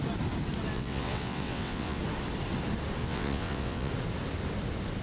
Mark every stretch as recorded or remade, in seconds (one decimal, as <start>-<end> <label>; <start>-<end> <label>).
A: 0.0-0.7 recorded; 0.7-2.0 remade; 2.0-3.0 recorded; 3.0-3.9 remade; 3.9-5.0 recorded